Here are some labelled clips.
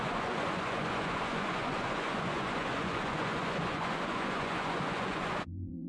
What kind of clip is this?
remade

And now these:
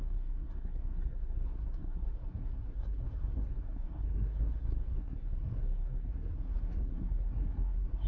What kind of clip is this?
remade